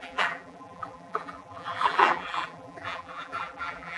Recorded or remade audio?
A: remade